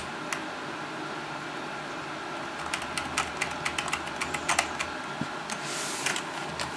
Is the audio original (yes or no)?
yes